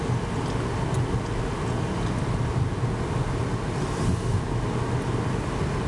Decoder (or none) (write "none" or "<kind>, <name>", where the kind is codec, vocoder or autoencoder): none